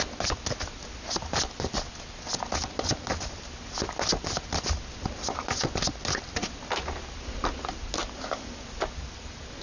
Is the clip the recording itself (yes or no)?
yes